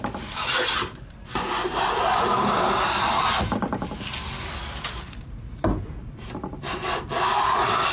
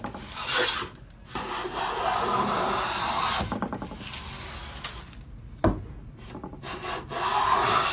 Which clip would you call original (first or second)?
second